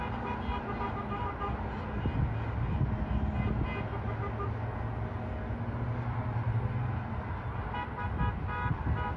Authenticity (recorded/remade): recorded